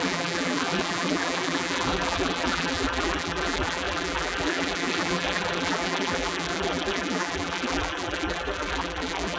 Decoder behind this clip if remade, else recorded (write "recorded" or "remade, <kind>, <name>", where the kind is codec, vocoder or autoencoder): remade, vocoder, BigVGAN v2